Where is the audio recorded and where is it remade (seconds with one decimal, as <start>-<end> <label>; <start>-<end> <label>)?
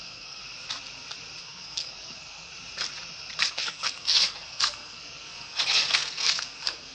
0.0-0.4 remade; 0.4-1.4 recorded; 1.4-2.5 remade; 2.5-3.5 recorded; 3.5-6.9 remade